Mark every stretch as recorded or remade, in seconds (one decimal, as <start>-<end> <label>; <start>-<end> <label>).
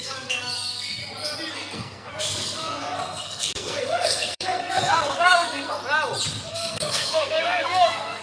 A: 0.0-1.0 remade; 1.0-1.5 recorded; 1.5-5.8 remade; 5.8-6.5 recorded; 6.5-8.2 remade